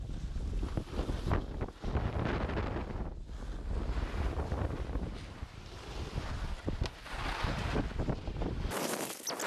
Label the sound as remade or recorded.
recorded